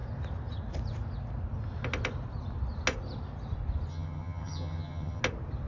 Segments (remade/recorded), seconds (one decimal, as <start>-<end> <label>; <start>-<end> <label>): 0.0-3.9 recorded; 3.9-5.2 remade; 5.2-5.7 recorded